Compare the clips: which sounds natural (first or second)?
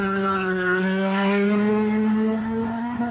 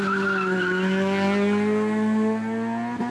second